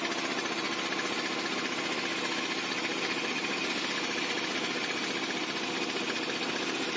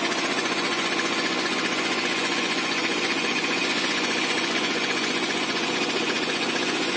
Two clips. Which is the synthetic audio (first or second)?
second